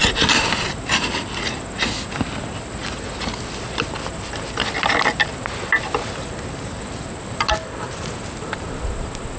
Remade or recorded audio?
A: recorded